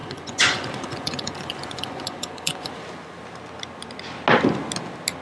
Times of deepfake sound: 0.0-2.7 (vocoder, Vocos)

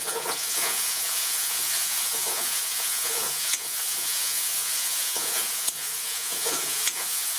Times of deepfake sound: 0.0-7.4 (vocoder, Vocos)

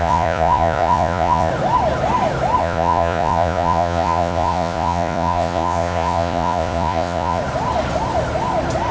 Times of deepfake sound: 0.0-1.5 (vocoder, Vocos); 2.6-7.4

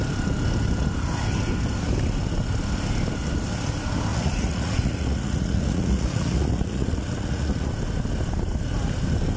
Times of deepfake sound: 4.1-7.7 (vocoder, Vocos)

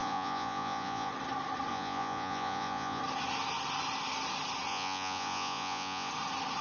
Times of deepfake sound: 0.0-1.1 (vocoder, Vocos); 1.7-3.0; 4.7-6.1